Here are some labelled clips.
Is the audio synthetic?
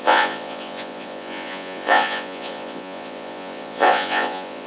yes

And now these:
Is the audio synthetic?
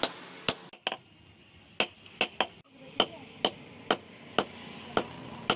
no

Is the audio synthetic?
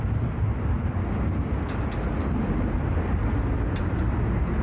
no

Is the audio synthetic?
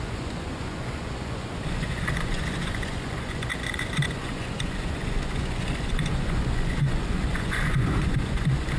yes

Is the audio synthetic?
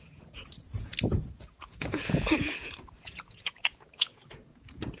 yes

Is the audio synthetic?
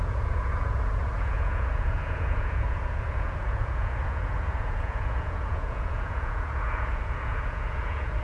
yes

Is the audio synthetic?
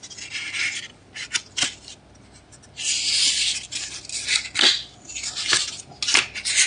no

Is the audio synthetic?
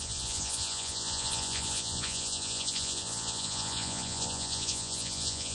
yes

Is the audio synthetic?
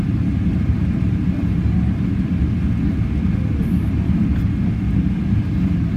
no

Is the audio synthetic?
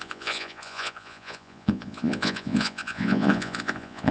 yes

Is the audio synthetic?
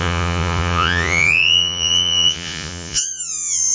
yes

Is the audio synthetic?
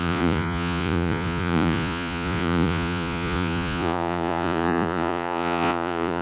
yes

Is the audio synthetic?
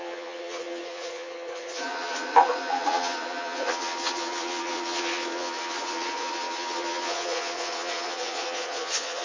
yes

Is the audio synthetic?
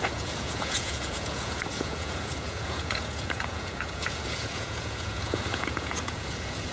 yes